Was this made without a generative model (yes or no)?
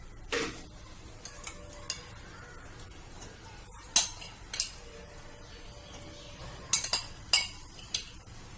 yes